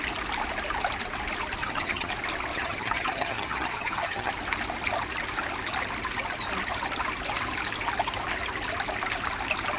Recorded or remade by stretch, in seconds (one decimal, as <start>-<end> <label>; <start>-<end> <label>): 0.0-1.6 recorded; 1.6-2.1 remade; 2.1-2.5 recorded; 2.5-4.3 remade; 4.3-9.8 recorded